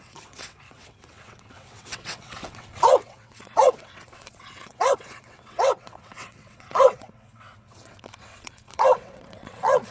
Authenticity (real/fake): fake